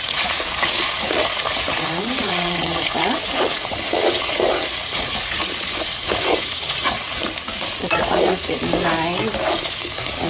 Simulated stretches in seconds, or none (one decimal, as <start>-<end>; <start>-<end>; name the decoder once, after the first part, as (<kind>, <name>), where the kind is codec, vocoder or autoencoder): 0.0-8.6 (vocoder, Vocos); 9.6-10.3